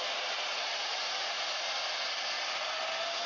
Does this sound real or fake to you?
real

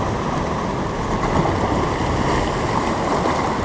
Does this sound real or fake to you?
real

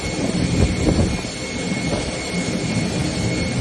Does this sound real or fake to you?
real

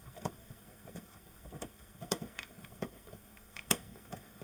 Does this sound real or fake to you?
fake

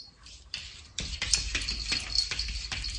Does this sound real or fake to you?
real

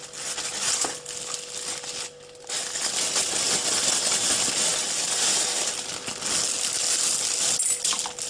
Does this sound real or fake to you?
real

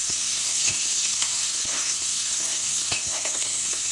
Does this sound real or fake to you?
fake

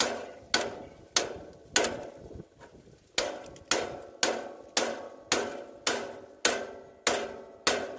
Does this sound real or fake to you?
real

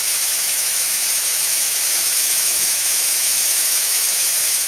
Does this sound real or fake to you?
fake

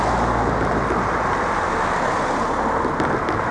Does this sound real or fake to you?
real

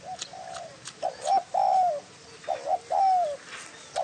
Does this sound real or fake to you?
real